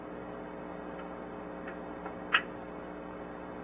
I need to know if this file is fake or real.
real